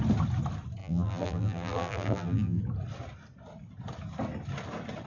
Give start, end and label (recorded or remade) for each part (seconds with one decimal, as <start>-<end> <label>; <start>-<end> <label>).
0.0-0.8 recorded; 0.8-2.6 remade; 2.6-5.1 recorded